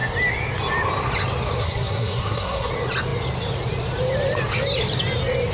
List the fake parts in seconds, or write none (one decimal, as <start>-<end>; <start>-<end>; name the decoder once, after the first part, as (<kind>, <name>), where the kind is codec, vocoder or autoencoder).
1.6-2.7 (codec, SNAC)